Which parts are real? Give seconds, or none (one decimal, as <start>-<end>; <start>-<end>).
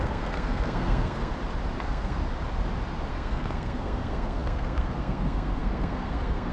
1.3-1.8; 2.2-3.1